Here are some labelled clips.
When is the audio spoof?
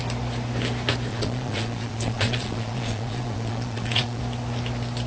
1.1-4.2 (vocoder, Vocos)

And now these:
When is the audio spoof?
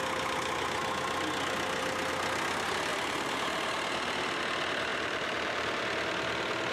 2.9-4.4 (vocoder, BigVGAN v2); 4.9-5.8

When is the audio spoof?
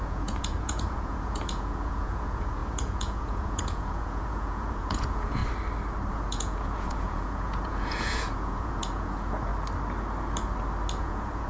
0.0-5.4 (vocoder, Vocos); 6.1-9.5; 11.0-11.5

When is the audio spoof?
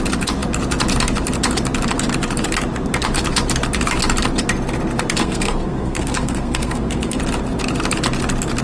5.2-7.2 (codec, SNAC)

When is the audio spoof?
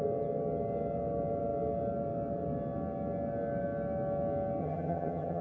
4.6-5.4 (vocoder, HiFi-GAN)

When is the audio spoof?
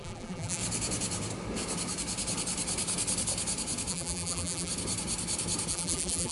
0.0-0.6 (vocoder, BigVGAN v2); 3.9-4.7; 5.7-6.3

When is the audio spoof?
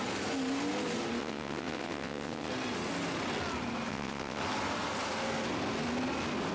1.2-2.5 (vocoder, WaveNeXt); 3.9-4.4